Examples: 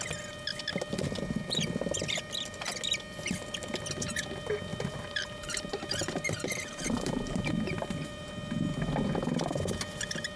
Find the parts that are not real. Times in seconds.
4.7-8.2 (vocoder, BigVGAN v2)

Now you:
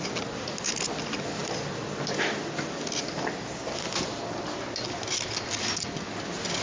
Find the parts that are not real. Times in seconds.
none

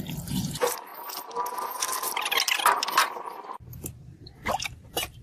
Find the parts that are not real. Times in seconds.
0.0-0.9 (vocoder, BigVGAN v2); 4.0-5.2

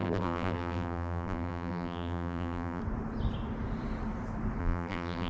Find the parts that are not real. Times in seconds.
0.0-2.8 (vocoder, BigVGAN v2); 4.6-5.3

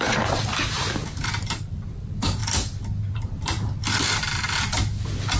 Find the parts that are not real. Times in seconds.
0.0-2.4 (vocoder, BigVGAN v2); 3.1-3.8

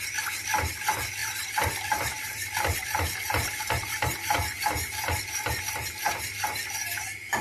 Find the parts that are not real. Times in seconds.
1.2-5.6 (vocoder, BigVGAN v2)